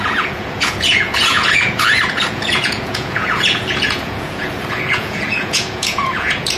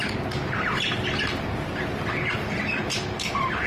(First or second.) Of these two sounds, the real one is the second